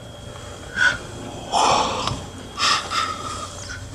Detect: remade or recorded recorded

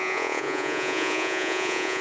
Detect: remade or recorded remade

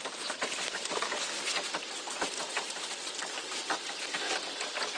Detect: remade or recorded recorded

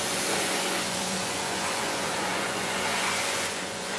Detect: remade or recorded remade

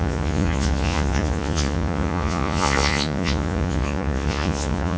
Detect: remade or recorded remade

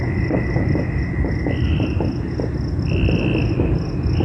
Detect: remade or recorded recorded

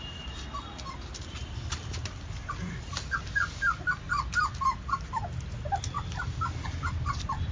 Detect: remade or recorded recorded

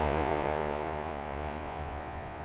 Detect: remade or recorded remade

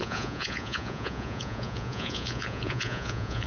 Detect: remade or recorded remade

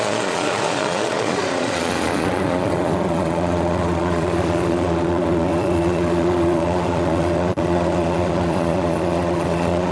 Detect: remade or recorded remade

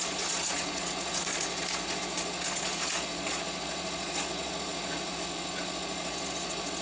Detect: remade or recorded remade